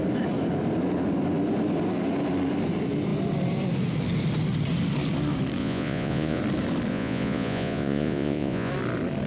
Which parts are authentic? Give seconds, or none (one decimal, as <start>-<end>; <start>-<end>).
0.0-5.6; 6.4-6.9; 8.7-9.3